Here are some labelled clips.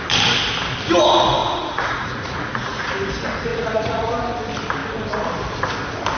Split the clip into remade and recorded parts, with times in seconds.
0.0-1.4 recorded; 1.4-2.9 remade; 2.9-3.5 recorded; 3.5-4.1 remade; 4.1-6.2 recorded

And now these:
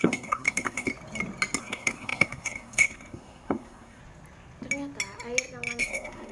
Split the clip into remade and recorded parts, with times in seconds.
0.0-0.9 remade; 0.9-1.6 recorded; 1.6-4.0 remade; 4.0-5.8 recorded; 5.8-6.3 remade

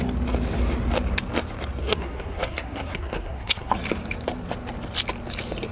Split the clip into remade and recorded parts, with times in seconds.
0.0-1.8 recorded; 1.8-3.7 remade; 3.7-5.7 recorded

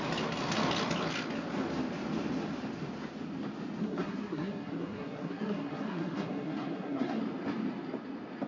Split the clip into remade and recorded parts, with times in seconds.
0.0-3.8 recorded; 3.8-7.2 remade; 7.2-8.5 recorded

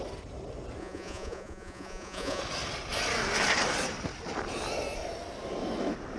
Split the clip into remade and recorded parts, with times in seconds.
0.0-0.8 recorded; 0.8-2.4 remade; 2.4-6.2 recorded

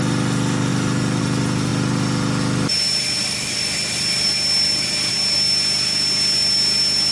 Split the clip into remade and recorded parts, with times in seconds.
0.0-7.1 recorded

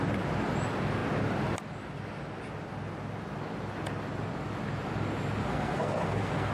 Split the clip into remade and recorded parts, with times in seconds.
0.0-5.4 recorded; 5.4-6.5 remade

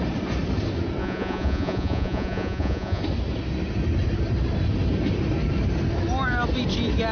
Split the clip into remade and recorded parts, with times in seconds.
0.0-1.0 recorded; 1.0-3.0 remade; 3.0-7.1 recorded